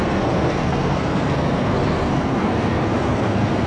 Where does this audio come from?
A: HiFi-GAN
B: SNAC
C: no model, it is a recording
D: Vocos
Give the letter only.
B